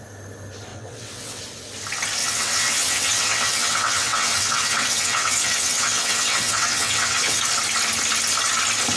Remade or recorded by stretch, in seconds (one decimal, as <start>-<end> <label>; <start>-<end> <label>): 0.0-0.7 recorded; 0.7-1.4 remade; 1.4-2.2 recorded; 2.2-7.4 remade; 7.4-9.0 recorded